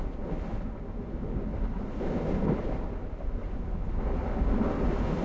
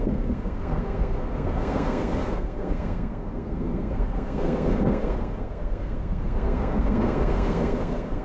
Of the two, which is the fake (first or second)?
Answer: second